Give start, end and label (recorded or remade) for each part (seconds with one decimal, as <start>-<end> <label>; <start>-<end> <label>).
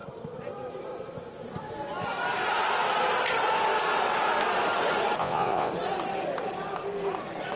0.0-5.2 recorded; 5.2-5.7 remade; 5.7-7.6 recorded